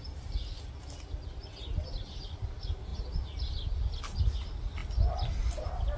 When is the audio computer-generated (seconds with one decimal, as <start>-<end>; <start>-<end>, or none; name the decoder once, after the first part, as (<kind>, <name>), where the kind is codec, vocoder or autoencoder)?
none